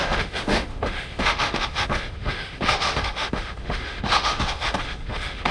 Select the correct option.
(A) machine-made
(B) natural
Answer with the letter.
A